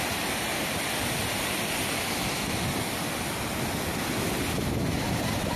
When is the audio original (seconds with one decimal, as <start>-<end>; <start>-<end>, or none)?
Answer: 0.0-5.6